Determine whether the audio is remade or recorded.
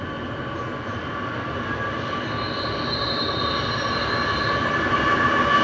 recorded